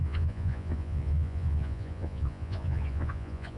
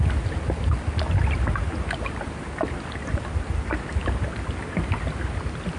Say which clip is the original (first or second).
second